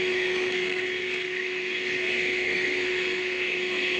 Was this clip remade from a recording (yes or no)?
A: yes